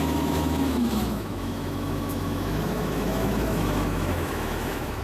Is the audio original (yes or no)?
no